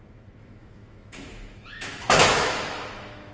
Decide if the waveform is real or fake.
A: fake